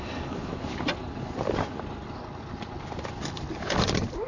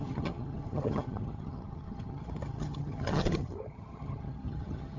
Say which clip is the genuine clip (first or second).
first